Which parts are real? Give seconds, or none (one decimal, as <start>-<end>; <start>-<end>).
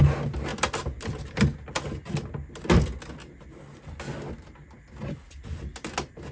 0.0-6.3